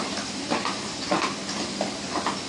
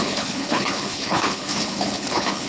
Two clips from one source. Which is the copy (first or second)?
second